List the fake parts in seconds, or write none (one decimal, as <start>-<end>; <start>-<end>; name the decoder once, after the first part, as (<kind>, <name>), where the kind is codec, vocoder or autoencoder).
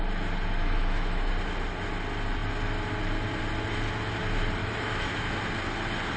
0.6-1.3 (autoencoder, DAC-VAE); 4.6-5.4